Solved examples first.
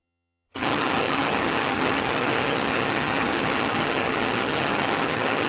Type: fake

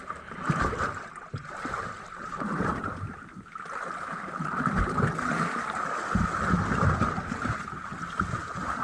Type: real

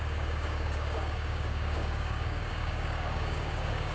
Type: fake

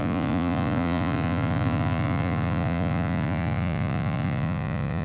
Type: fake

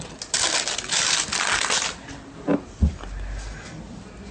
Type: real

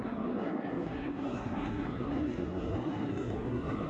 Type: fake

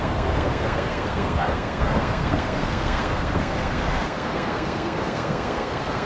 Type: fake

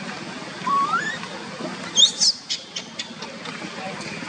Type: real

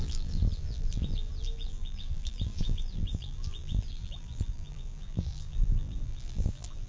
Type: fake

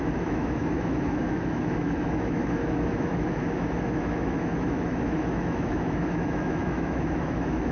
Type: fake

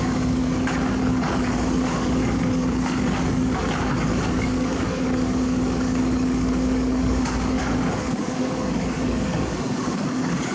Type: fake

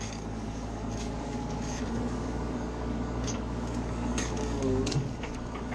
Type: fake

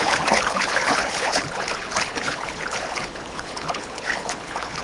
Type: fake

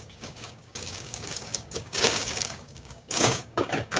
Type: fake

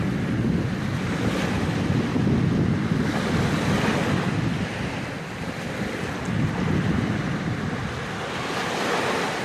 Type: real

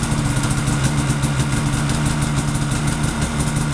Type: real